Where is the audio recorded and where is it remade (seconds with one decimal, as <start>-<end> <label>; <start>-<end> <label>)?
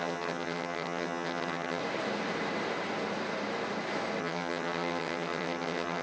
0.0-1.8 remade; 1.8-4.2 recorded; 4.2-6.0 remade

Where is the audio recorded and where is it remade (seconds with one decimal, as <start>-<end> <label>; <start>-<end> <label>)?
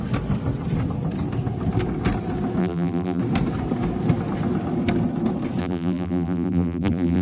0.0-2.6 recorded; 2.6-3.2 remade; 3.2-5.6 recorded; 5.6-7.2 remade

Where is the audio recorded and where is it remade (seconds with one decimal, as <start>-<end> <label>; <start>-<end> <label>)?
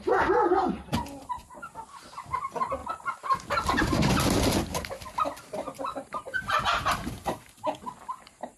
0.0-5.9 recorded; 5.9-7.1 remade; 7.1-8.6 recorded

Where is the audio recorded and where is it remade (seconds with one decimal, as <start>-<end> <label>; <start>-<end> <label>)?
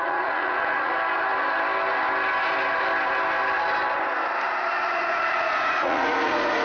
0.0-0.9 remade; 0.9-4.9 recorded; 4.9-6.6 remade